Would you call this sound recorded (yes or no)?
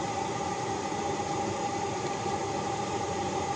no